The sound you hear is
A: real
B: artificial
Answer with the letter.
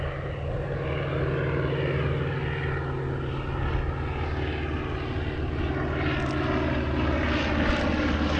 A